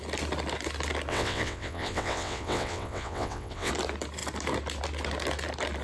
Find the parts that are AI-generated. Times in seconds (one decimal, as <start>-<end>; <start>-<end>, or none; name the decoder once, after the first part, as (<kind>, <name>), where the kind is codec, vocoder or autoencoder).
1.1-3.7 (vocoder, WaveNeXt)